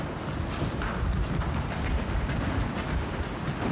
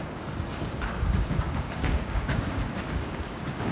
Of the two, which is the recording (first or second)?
first